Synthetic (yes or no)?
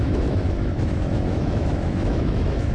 yes